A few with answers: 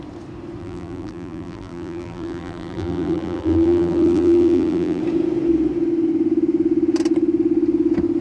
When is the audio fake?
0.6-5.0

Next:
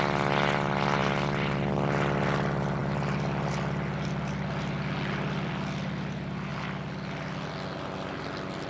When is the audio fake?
none

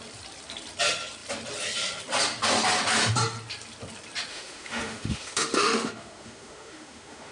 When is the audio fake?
4.3-7.3